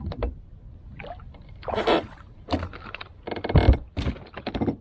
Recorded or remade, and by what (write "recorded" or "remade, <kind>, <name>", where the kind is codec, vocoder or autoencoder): recorded